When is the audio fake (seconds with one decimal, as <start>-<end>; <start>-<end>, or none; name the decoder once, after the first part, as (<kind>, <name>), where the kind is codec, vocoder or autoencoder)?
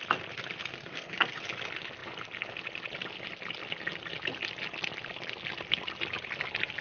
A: 0.7-1.4 (codec, SNAC)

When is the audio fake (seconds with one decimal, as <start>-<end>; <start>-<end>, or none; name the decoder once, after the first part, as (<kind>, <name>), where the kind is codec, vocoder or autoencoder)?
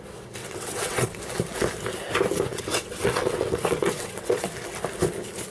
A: 0.4-1.2 (vocoder, WaveNeXt); 2.5-4.5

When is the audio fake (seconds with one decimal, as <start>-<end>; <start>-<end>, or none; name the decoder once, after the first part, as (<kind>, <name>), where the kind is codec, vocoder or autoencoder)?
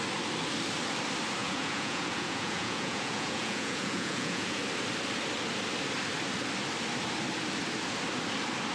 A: 1.4-4.6 (vocoder, Vocos)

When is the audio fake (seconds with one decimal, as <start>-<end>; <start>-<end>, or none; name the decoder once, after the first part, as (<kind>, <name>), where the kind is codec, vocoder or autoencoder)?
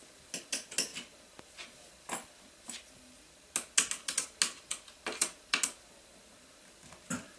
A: none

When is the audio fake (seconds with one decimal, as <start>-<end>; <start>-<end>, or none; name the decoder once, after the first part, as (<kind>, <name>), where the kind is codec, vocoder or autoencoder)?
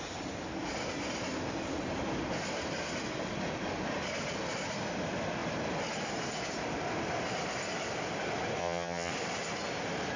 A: 8.6-9.1 (vocoder, HiFi-GAN)